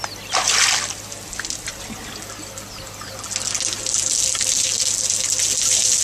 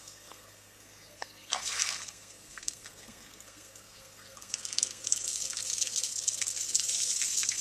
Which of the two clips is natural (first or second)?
first